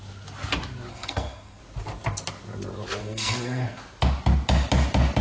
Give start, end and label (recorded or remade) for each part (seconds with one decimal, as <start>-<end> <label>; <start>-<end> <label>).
0.0-0.9 recorded; 0.9-1.6 remade; 1.6-3.0 recorded; 3.0-3.8 remade; 3.8-5.2 recorded